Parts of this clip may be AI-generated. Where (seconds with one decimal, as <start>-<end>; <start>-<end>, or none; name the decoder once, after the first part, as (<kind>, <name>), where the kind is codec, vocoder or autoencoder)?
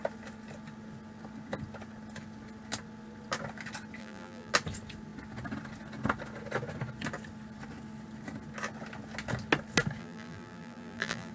4.0-4.5 (vocoder, BigVGAN v2); 10.0-11.3